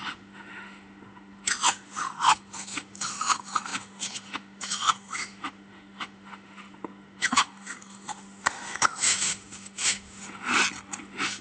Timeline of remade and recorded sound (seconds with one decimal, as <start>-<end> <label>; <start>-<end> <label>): 0.0-10.5 remade; 10.5-11.0 recorded; 11.0-11.4 remade